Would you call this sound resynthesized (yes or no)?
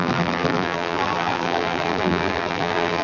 yes